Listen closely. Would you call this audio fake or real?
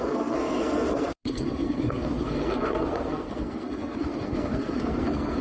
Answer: fake